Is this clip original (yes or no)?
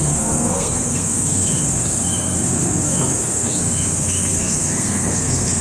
no